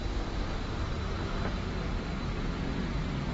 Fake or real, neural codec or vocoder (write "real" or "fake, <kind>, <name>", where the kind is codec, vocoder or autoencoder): real